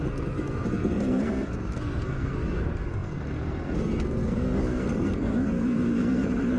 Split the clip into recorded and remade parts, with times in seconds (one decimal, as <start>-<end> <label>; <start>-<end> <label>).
0.0-6.6 remade